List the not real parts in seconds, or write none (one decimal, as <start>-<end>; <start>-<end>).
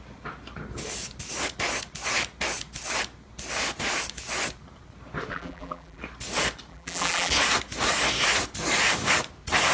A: 5.3-6.0; 6.7-7.3